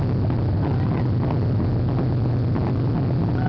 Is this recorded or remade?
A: recorded